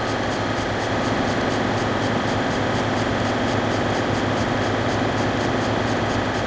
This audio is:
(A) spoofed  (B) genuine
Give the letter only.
B